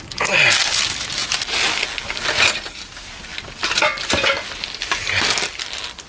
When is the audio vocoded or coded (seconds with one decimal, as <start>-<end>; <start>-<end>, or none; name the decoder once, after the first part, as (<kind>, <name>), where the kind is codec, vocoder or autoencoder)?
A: none